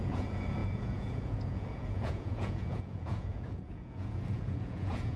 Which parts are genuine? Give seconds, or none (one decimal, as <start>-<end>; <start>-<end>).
none